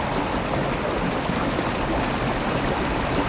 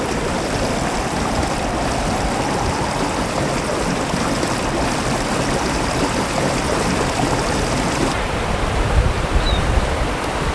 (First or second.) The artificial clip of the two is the second